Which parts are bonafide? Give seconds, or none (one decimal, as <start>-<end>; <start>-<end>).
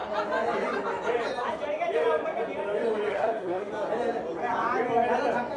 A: 0.0-3.1; 3.7-5.6